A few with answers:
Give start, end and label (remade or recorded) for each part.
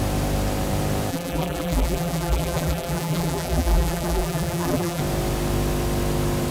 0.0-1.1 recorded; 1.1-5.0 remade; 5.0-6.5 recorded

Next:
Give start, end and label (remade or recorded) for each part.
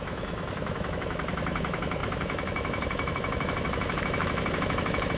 0.0-5.2 remade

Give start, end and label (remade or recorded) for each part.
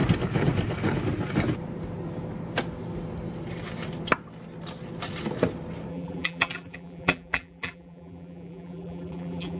0.0-5.9 recorded; 5.9-9.6 remade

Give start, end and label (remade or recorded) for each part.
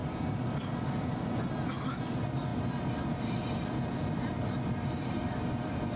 0.0-2.5 recorded; 2.5-6.0 remade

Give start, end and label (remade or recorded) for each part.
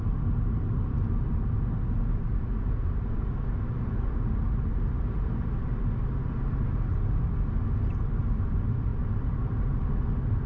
0.0-10.5 recorded